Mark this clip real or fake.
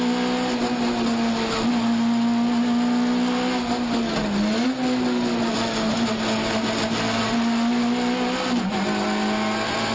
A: real